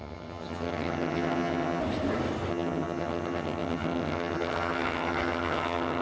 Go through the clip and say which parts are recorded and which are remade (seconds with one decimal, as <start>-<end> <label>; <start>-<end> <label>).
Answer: 0.0-1.8 remade; 1.8-2.5 recorded; 2.5-6.0 remade